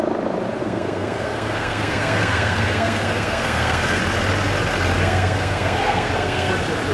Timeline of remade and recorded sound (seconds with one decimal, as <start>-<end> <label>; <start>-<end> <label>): 0.0-0.6 recorded; 0.6-4.0 remade; 4.0-5.0 recorded; 5.0-6.5 remade; 6.5-6.9 recorded